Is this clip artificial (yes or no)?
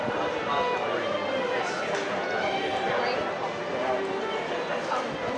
no